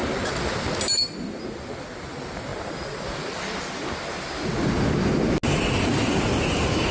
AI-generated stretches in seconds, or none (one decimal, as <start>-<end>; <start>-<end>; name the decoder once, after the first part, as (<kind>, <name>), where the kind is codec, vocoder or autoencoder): none